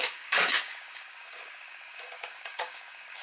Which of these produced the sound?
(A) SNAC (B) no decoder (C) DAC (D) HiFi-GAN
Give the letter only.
C